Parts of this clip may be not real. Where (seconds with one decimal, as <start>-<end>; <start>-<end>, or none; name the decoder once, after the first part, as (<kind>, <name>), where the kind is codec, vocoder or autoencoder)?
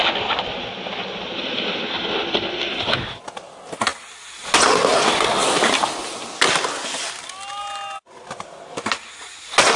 none